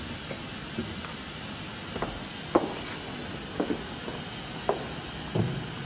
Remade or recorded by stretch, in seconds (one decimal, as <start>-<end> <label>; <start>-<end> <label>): 0.0-5.9 recorded

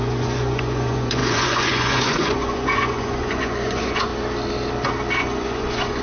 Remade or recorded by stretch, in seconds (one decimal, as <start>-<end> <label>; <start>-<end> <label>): 0.0-4.1 remade; 4.1-5.2 recorded; 5.2-6.0 remade

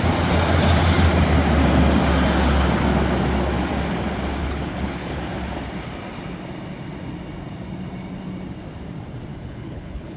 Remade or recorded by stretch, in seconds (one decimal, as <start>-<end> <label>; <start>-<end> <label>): 0.0-4.4 recorded; 4.4-5.2 remade; 5.2-9.3 recorded; 9.3-10.2 remade

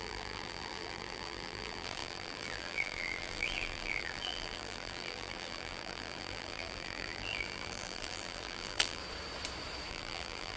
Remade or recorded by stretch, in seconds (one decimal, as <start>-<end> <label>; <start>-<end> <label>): 0.0-9.0 remade; 9.0-9.9 recorded; 9.9-10.6 remade

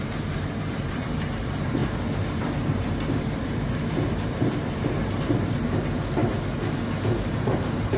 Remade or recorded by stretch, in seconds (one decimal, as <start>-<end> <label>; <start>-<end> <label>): 0.0-6.2 remade; 6.2-7.3 recorded; 7.3-8.0 remade

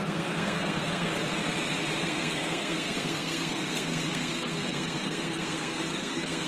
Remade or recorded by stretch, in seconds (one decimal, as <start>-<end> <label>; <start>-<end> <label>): 0.0-1.1 remade; 1.1-2.0 recorded; 2.0-6.5 remade